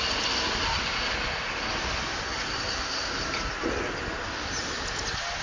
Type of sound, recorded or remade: recorded